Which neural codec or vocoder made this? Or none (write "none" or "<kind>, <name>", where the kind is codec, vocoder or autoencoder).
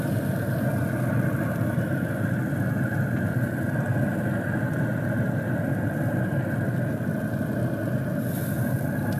none